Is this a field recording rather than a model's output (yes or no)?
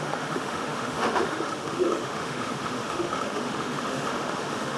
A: no